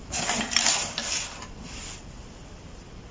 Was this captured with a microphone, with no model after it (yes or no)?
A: no